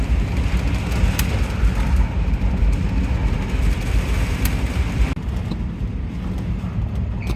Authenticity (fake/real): real